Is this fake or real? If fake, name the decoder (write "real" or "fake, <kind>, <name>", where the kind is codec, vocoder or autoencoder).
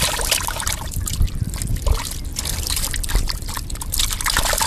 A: real